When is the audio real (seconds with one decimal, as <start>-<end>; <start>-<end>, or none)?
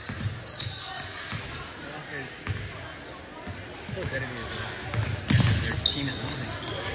0.0-6.9